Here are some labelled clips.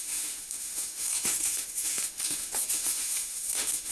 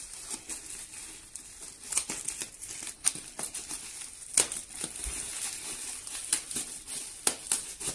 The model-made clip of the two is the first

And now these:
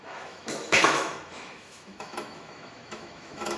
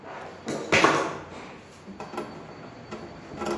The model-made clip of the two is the first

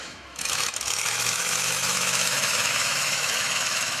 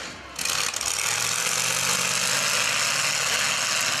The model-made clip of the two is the first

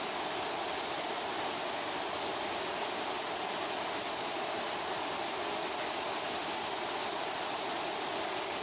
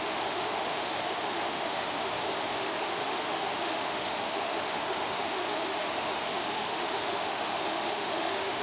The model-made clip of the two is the second